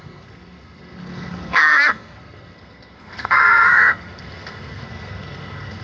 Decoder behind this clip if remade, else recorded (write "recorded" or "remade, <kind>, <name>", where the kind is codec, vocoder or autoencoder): remade, codec, SNAC